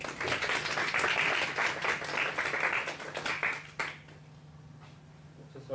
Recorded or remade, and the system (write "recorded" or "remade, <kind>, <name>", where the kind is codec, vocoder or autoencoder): recorded